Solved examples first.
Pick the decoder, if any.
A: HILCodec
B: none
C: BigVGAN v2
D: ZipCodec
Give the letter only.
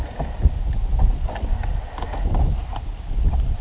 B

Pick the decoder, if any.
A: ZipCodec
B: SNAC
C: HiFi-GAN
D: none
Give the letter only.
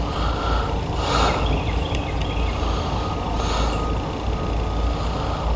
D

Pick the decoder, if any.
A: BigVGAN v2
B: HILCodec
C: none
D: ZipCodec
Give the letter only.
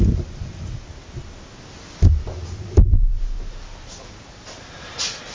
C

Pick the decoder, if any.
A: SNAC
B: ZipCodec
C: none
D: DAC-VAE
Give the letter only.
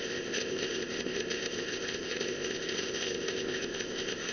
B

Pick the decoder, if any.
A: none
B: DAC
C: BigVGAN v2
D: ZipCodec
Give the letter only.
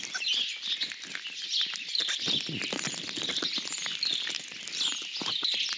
A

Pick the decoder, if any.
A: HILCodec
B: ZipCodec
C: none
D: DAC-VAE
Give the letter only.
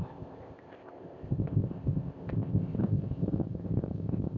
B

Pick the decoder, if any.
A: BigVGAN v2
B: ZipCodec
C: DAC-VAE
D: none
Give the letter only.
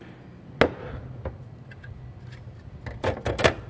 D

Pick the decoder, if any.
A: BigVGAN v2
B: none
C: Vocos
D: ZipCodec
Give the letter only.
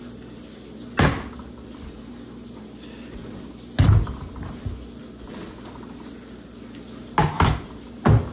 B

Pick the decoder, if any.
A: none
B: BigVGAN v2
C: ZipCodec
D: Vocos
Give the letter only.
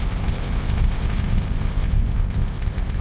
C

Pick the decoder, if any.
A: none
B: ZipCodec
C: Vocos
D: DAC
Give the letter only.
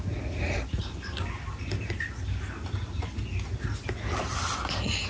A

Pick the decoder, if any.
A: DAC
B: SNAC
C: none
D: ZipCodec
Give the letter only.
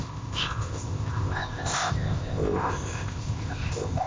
D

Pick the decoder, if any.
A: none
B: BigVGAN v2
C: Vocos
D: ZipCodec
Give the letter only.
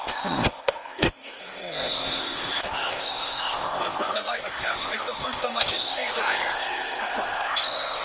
D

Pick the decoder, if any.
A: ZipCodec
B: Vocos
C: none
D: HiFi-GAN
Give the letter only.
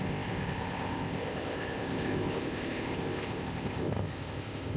A